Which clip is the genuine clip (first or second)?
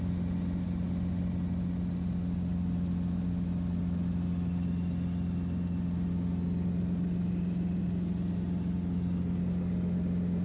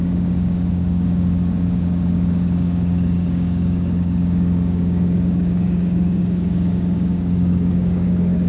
first